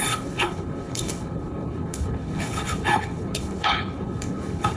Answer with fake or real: fake